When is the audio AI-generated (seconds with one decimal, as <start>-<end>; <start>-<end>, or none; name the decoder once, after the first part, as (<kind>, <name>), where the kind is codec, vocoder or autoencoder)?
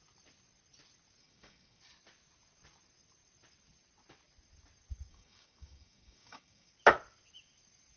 1.2-1.8 (codec, DAC); 5.1-6.7